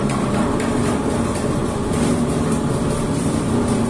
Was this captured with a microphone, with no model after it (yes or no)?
no